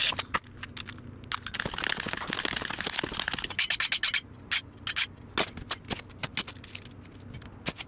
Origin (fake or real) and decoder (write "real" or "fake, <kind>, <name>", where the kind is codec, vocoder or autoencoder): real